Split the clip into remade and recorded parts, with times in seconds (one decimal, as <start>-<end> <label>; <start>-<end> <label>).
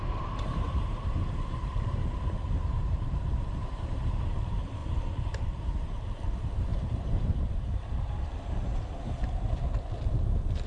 0.0-10.7 remade